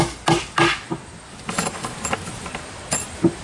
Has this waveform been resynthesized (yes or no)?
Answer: no